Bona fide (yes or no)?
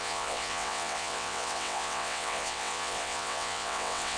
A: no